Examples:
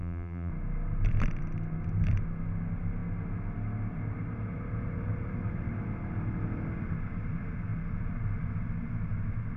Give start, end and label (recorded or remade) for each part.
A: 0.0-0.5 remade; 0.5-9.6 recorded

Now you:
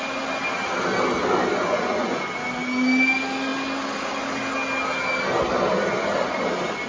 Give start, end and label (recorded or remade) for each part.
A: 0.0-1.6 recorded; 1.6-2.2 remade; 2.2-6.9 recorded

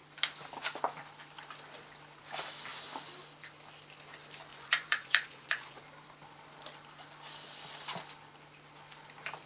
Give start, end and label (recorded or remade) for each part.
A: 0.0-4.5 recorded; 4.5-5.8 remade; 5.8-9.5 recorded